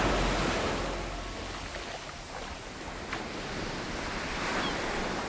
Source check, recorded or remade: recorded